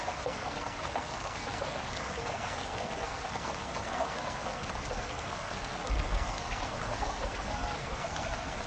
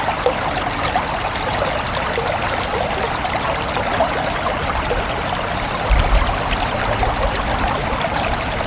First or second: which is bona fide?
second